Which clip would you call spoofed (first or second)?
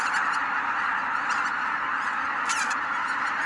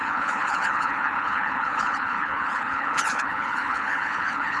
second